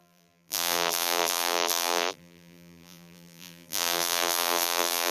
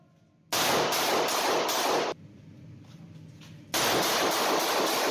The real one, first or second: second